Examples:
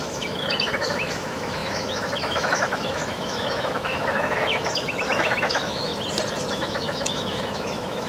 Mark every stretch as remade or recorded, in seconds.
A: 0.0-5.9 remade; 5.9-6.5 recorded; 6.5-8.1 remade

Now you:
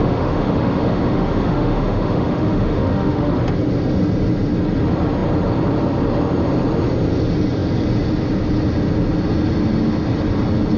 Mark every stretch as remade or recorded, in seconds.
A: 0.0-3.3 remade; 3.3-10.8 recorded

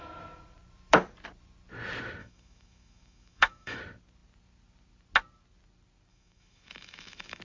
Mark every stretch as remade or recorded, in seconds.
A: 0.0-2.2 recorded; 2.2-3.8 remade; 3.8-6.1 recorded; 6.1-7.4 remade

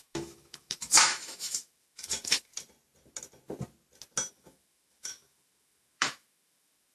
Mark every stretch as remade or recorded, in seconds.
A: 0.0-2.5 remade; 2.5-4.3 recorded; 4.3-6.9 remade

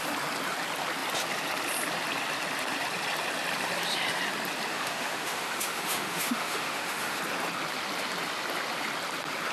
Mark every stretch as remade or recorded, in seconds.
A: 0.0-4.7 recorded; 4.7-7.2 remade; 7.2-9.5 recorded

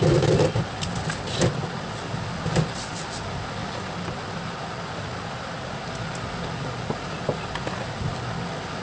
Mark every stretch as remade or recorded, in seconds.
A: 0.0-8.8 recorded